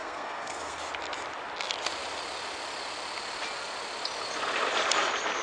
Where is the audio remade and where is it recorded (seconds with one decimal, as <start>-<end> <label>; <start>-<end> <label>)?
0.0-0.8 remade; 0.8-5.4 recorded